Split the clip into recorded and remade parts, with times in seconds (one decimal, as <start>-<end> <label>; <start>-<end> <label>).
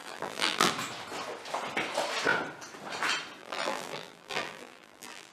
0.0-0.7 remade; 0.7-3.4 recorded; 3.4-5.3 remade